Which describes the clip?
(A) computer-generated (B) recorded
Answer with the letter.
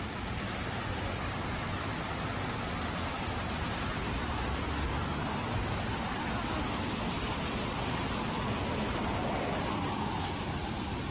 B